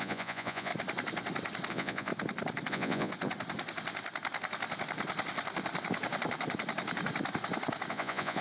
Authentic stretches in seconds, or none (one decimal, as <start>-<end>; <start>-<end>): 0.7-1.7; 2.1-2.7; 3.1-7.9